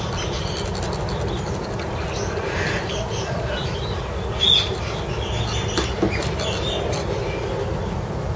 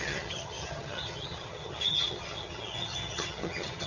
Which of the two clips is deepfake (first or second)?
second